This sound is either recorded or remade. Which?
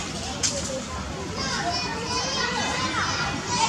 recorded